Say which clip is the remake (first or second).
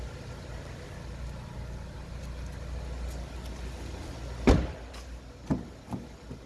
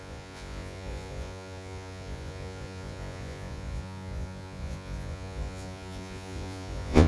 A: second